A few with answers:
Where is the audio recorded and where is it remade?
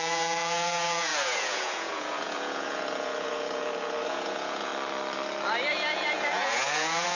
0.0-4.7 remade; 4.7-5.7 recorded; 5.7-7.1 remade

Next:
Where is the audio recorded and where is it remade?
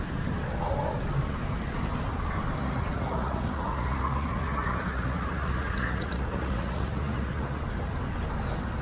0.0-2.6 recorded; 2.6-7.6 remade; 7.6-8.8 recorded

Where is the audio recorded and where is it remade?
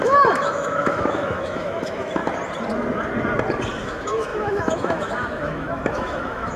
0.0-2.2 remade; 2.2-3.8 recorded; 3.8-6.6 remade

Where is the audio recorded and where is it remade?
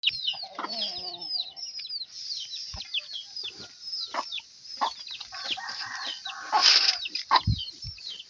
0.0-1.4 recorded; 1.4-2.0 remade; 2.0-6.6 recorded; 6.6-7.4 remade; 7.4-8.3 recorded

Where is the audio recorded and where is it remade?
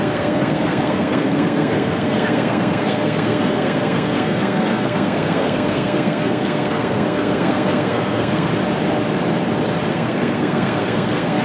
0.0-8.5 remade; 8.5-9.9 recorded; 9.9-11.4 remade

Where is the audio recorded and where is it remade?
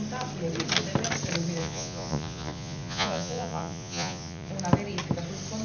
0.0-1.6 recorded; 1.6-4.5 remade; 4.5-5.6 recorded